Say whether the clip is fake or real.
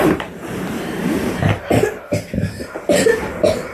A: fake